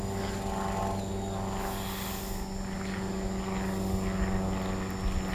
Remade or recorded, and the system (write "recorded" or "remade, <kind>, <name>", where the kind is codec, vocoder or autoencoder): recorded